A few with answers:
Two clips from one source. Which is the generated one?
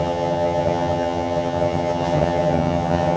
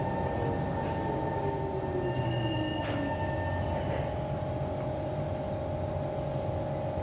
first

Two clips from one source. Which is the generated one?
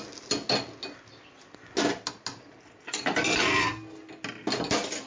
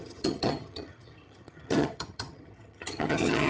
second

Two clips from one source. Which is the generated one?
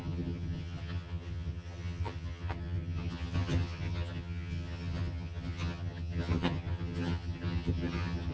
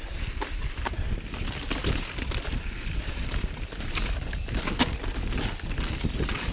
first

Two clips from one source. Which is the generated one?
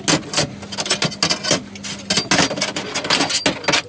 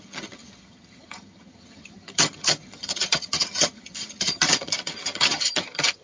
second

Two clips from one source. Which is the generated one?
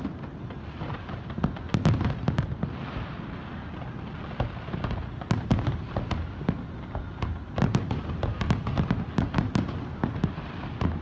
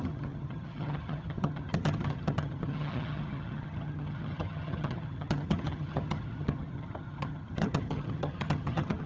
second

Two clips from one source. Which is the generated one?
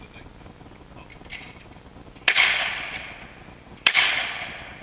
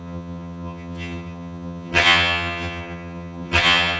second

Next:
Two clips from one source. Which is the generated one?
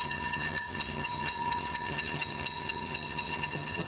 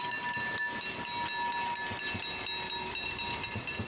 first